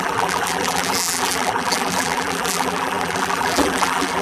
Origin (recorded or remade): remade